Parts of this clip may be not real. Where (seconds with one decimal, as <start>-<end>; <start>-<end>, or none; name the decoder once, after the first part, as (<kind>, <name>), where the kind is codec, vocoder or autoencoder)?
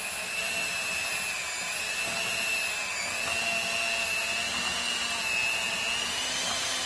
none